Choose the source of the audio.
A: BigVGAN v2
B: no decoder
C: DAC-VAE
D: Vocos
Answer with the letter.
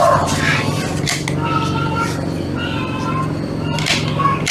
B